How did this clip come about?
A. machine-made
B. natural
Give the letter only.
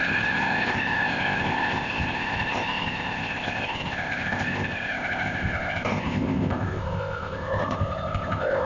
A